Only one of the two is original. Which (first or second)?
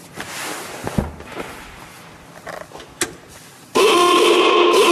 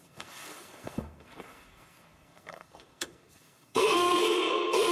first